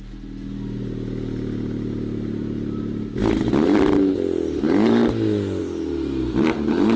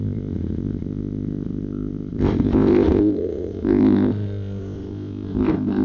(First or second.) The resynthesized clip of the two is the second